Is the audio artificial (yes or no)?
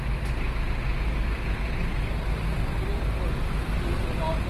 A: no